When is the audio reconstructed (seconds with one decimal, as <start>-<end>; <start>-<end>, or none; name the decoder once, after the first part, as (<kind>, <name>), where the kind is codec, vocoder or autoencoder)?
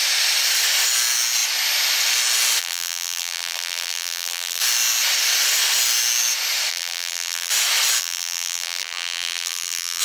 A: 2.6-4.6 (vocoder, BigVGAN v2); 6.7-7.5; 8.0-10.0